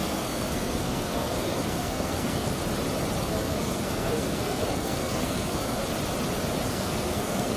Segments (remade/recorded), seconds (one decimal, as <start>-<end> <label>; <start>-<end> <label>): 0.0-2.6 remade; 2.6-3.2 recorded; 3.2-5.8 remade; 5.8-6.7 recorded; 6.7-7.6 remade